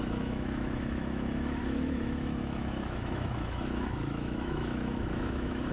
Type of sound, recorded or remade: remade